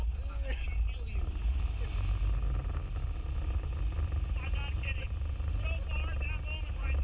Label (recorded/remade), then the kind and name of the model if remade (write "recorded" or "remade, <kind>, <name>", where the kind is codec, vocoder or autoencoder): recorded